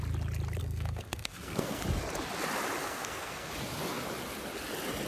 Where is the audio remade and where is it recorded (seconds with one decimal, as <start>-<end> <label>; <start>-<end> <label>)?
0.0-0.6 recorded; 0.6-1.8 remade; 1.8-2.8 recorded; 2.8-3.5 remade; 3.5-5.1 recorded